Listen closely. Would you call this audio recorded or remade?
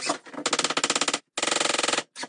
recorded